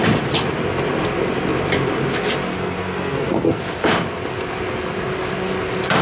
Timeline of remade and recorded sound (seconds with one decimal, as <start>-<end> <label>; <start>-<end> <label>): 0.0-2.5 recorded; 2.5-3.6 remade; 3.6-6.0 recorded